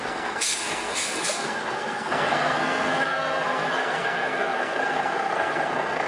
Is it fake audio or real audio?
fake